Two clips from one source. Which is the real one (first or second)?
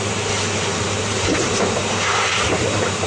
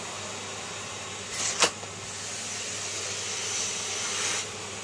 second